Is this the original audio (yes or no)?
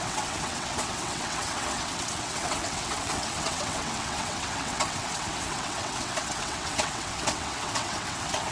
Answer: no